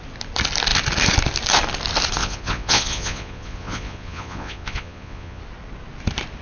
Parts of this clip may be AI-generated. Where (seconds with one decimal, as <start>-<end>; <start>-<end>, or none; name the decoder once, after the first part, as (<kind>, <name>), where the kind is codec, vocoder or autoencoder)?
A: 2.2-5.4 (vocoder, Vocos)